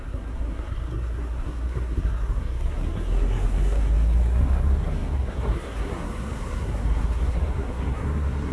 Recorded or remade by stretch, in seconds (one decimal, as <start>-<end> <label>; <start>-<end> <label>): 0.0-8.5 remade